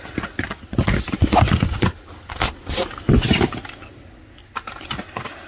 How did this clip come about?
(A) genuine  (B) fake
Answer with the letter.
A